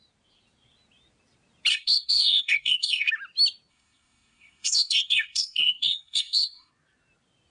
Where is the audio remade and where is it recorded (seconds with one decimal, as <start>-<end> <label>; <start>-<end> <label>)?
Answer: 0.0-1.7 recorded; 1.7-3.1 remade; 3.1-3.7 recorded; 3.7-6.7 remade; 6.7-7.5 recorded